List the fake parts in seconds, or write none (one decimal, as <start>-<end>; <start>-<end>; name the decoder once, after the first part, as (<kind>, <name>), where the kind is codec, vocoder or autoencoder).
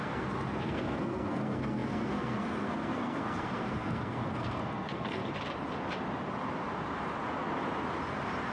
0.0-5.2 (codec, SNAC)